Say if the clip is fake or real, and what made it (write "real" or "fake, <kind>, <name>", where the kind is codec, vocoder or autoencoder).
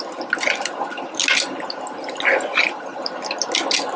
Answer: real